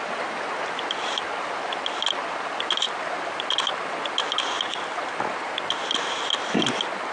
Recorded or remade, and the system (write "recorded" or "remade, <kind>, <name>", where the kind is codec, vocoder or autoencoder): recorded